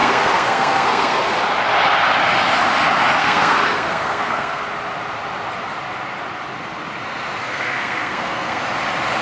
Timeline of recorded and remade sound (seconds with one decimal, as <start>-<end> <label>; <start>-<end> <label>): 0.0-1.3 remade; 1.3-3.2 recorded; 3.2-4.6 remade; 4.6-7.4 recorded; 7.4-8.6 remade; 8.6-9.2 recorded